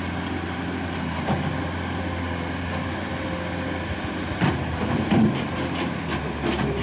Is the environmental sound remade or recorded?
recorded